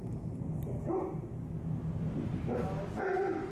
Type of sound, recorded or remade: recorded